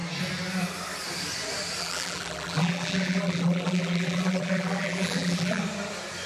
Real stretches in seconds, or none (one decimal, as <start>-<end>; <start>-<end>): 0.0-1.8; 5.6-6.3